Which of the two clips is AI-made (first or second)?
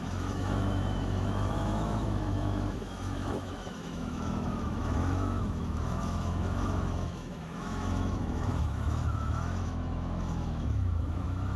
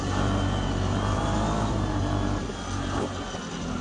first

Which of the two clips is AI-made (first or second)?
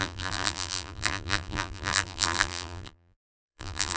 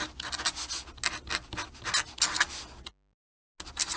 first